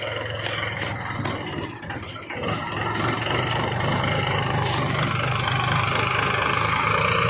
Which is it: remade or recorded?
recorded